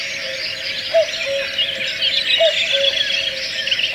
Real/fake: real